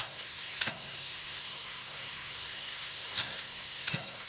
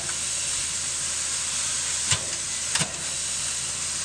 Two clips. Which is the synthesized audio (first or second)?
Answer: first